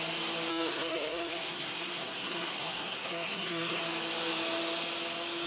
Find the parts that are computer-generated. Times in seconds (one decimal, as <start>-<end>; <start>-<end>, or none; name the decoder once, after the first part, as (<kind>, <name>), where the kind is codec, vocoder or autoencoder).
0.5-3.8 (codec, SNAC)

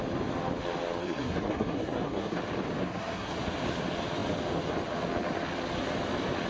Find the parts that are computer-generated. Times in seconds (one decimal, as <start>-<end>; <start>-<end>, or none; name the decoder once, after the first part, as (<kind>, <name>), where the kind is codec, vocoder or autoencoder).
1.0-2.4 (codec, SNAC); 2.8-3.3

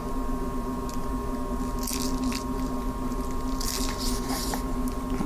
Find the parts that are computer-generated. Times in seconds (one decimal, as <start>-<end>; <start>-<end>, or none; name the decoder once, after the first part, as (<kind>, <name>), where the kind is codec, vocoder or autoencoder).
none

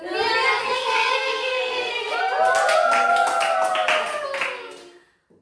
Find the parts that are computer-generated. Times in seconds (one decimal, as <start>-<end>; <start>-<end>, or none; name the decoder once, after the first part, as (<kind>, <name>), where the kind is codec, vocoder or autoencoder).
0.6-2.2 (codec, SNAC)

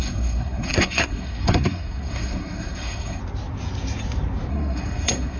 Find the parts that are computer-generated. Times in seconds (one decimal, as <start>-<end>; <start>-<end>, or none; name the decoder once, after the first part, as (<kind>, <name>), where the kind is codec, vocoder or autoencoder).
0.0-3.2 (codec, SNAC); 4.5-5.4

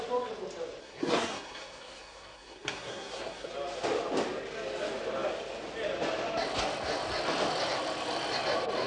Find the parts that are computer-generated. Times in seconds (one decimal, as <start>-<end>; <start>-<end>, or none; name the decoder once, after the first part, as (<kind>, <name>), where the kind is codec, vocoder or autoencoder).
0.8-3.5 (codec, SNAC)